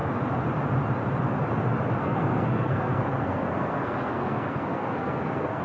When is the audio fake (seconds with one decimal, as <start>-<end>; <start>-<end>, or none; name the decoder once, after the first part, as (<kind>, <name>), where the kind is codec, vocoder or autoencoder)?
2.0-5.6 (codec, SNAC)